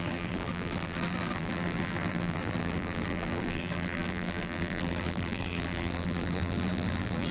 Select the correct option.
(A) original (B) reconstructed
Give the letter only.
B